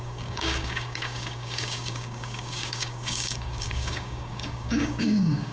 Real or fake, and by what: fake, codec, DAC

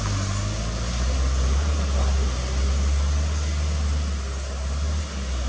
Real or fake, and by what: real